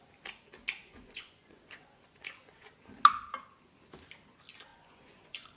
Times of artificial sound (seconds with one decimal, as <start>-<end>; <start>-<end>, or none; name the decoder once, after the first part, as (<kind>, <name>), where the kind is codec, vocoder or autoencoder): 0.8-2.7 (vocoder, Vocos); 4.7-5.6